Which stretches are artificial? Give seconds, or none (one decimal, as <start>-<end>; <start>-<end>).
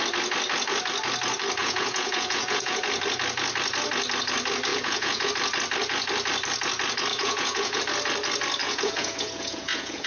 1.6-2.8; 4.7-5.3; 7.1-7.8; 8.6-10.1